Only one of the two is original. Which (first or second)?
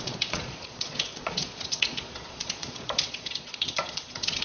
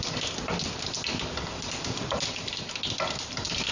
second